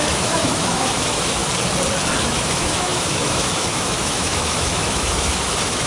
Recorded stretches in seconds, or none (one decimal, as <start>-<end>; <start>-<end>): 1.4-2.2

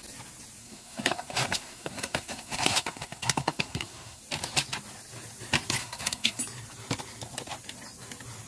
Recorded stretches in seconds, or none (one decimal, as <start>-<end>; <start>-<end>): 0.0-0.6; 4.2-5.8; 6.4-8.5

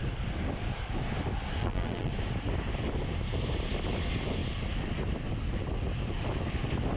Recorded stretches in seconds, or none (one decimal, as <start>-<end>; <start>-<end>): 0.0-1.6; 2.1-7.0

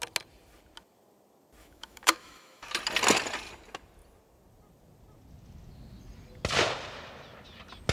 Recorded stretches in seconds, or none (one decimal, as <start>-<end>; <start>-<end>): 0.0-1.6; 2.7-7.9

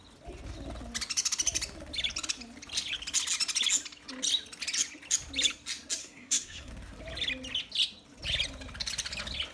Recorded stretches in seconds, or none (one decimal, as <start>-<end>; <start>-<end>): 0.0-6.0; 6.7-9.5

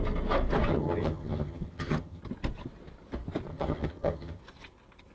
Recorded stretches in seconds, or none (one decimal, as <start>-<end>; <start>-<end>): 0.0-0.7; 2.2-3.5; 4.4-5.1

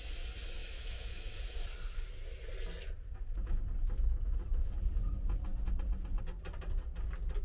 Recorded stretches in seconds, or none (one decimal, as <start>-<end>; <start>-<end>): 0.0-0.6; 1.4-7.4

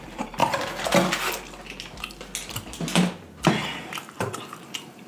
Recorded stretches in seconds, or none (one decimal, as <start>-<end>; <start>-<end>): 0.4-3.5